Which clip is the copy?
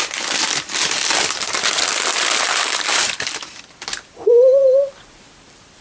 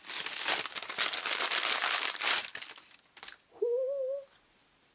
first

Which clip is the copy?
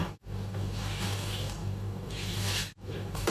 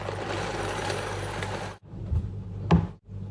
first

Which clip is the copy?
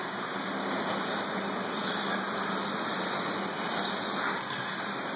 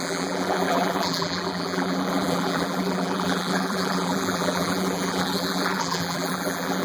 second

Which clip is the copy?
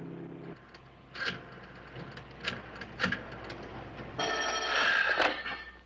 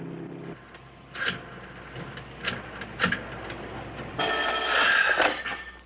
second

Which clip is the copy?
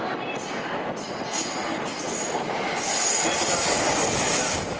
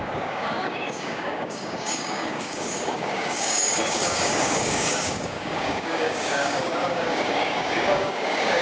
second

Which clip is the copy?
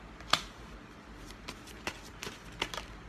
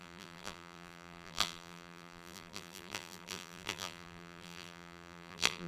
second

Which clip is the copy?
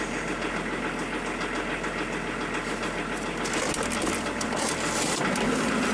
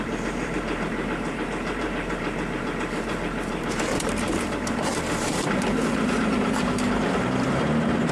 second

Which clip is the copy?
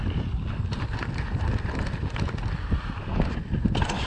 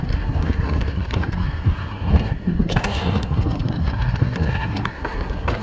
second